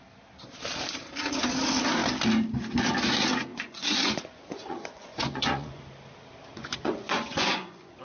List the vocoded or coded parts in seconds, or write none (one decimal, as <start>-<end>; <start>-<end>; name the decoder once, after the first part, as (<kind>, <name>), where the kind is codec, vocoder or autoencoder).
3.5-5.8 (vocoder, Vocos); 6.5-8.0